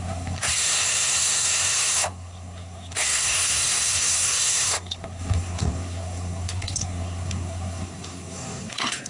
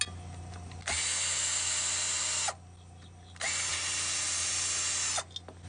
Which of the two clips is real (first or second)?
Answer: second